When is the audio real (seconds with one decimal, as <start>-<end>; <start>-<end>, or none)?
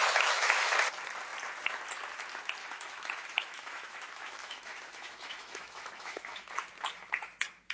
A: 0.8-2.6; 6.5-7.7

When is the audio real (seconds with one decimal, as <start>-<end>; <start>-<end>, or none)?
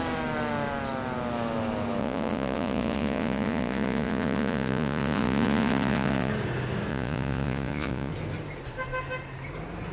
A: 0.0-2.0; 6.3-6.9; 8.1-9.9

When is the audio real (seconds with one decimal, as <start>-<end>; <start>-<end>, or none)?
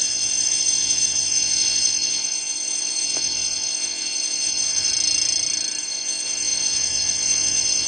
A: 4.9-5.8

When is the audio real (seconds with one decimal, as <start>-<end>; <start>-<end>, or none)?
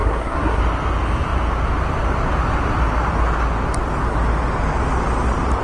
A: 0.6-5.6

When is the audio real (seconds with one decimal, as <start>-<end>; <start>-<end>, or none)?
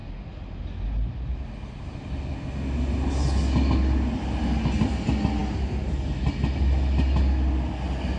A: 0.0-8.2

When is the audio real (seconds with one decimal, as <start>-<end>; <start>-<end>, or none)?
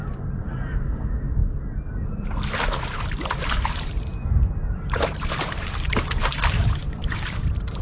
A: 0.0-0.5; 1.4-1.9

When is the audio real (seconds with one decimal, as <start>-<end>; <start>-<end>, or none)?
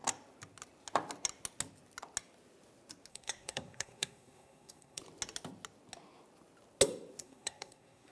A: 0.0-3.1; 5.0-7.2